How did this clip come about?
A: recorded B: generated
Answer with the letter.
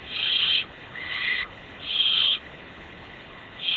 B